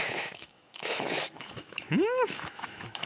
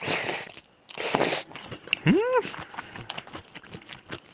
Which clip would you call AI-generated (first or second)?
first